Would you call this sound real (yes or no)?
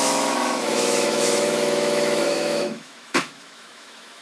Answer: no